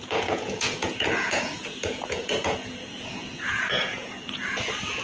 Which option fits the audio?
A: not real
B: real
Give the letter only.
A